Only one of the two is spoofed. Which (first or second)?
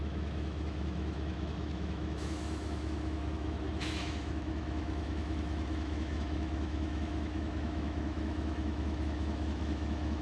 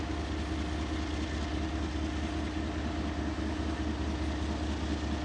first